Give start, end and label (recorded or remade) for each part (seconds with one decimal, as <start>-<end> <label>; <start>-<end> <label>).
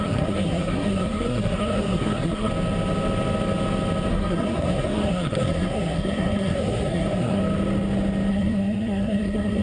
0.0-2.5 remade; 2.5-4.1 recorded; 4.1-7.4 remade; 7.4-8.3 recorded; 8.3-9.6 remade